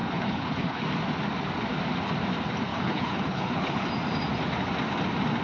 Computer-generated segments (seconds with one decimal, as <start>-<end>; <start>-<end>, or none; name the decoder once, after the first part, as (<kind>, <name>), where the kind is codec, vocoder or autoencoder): 0.0-0.8 (codec, HILCodec); 2.7-3.9